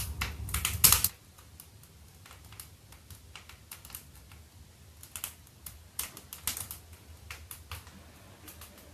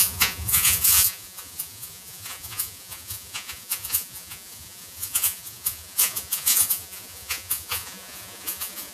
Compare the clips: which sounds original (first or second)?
first